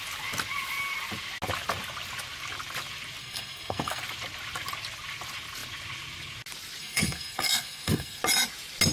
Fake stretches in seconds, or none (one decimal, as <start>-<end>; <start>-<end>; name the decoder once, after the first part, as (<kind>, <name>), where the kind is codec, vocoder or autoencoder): 3.2-4.0 (codec, SNAC); 6.8-8.2